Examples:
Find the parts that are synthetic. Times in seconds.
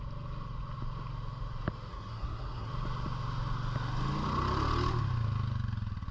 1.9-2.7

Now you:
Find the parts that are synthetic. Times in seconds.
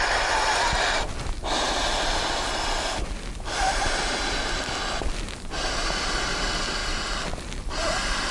none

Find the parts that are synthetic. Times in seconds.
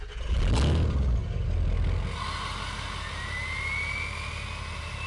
none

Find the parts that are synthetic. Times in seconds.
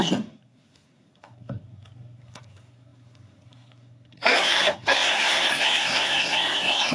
0.0-6.9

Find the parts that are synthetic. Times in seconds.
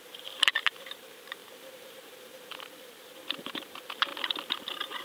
0.0-4.1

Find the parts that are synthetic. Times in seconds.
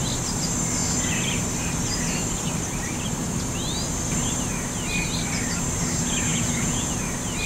6.3-6.9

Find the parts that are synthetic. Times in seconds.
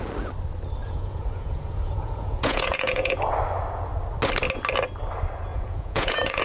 0.8-3.2; 5.5-6.4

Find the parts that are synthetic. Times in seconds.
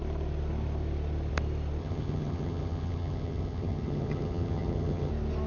1.8-5.1